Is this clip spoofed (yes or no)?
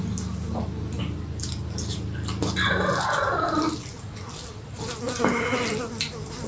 no